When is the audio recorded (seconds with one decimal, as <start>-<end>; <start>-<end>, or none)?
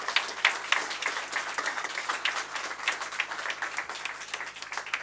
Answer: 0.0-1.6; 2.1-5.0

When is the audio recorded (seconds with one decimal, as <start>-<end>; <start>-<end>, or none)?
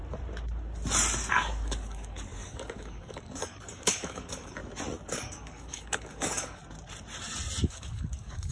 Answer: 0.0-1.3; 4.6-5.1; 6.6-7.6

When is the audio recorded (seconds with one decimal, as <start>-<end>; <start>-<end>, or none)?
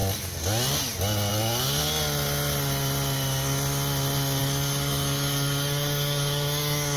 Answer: 0.0-1.3; 1.8-4.4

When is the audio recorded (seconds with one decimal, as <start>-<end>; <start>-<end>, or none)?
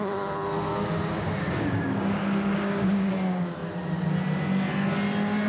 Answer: 0.0-0.7; 3.1-5.5